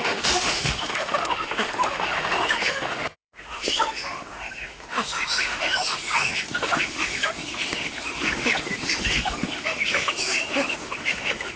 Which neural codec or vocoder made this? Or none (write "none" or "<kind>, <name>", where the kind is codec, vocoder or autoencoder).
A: autoencoder, DAC-VAE